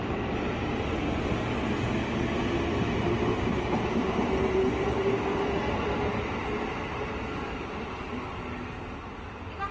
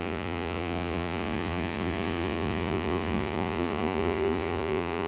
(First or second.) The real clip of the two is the first